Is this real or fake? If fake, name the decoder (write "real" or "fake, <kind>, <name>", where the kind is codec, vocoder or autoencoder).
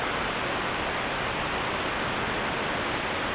real